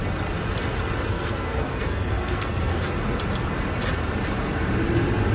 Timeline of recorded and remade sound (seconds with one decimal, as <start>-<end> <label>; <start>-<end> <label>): 0.0-1.1 recorded; 1.1-2.9 remade; 2.9-5.3 recorded